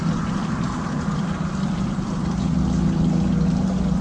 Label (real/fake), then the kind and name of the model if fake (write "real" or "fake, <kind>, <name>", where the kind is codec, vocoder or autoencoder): real